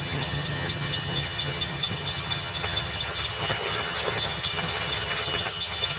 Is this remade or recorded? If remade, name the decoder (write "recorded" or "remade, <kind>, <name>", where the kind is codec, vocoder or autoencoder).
remade, vocoder, HiFi-GAN